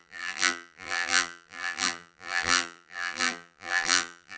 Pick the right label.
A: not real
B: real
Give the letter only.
A